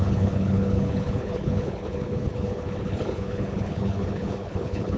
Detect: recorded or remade remade